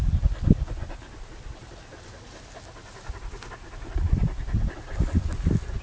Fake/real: real